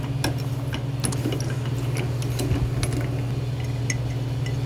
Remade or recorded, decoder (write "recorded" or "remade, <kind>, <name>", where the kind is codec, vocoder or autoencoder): recorded